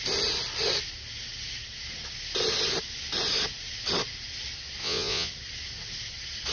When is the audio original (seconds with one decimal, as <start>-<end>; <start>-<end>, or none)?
0.0-4.8; 5.3-6.5